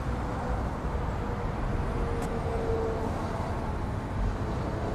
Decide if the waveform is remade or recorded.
recorded